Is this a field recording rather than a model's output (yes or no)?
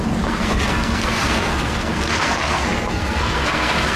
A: no